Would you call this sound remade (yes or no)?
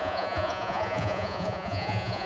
yes